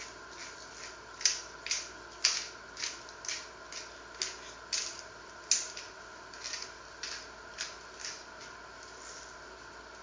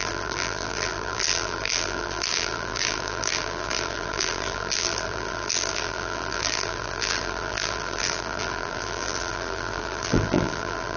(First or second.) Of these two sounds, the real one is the first